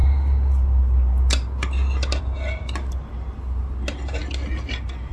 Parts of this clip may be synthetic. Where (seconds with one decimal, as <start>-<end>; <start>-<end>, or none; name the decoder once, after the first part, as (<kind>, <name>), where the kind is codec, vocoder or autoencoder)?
none